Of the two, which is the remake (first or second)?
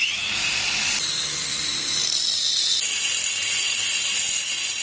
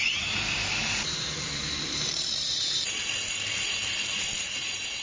second